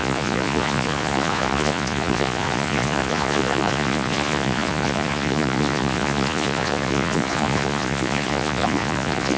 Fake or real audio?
fake